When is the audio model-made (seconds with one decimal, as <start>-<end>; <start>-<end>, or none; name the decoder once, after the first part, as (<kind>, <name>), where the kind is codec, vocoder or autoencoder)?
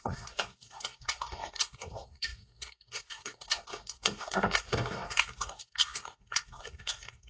0.0-7.3 (codec, SNAC)